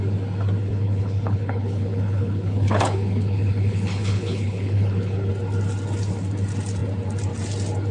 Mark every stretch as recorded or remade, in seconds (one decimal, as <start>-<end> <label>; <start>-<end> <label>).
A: 0.0-0.6 recorded; 0.6-5.3 remade; 5.3-7.9 recorded